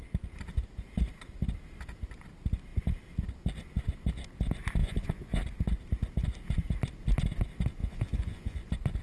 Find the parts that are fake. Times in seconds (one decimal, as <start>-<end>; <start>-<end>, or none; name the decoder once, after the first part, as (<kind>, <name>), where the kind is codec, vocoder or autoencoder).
4.8-5.4 (vocoder, Vocos); 7.8-8.6